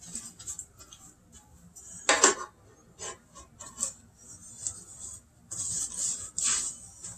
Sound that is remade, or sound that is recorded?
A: recorded